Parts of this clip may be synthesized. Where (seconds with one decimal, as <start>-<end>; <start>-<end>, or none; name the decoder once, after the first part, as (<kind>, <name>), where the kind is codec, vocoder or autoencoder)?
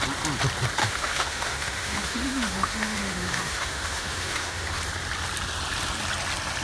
0.8-4.8 (autoencoder, DAC-VAE)